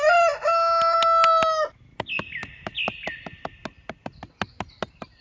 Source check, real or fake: real